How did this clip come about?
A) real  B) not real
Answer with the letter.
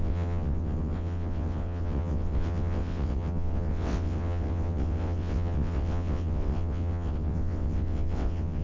B